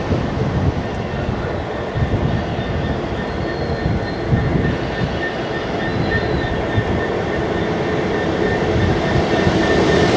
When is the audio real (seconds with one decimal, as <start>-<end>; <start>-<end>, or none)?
0.0-10.2